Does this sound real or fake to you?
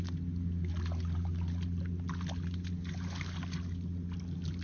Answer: real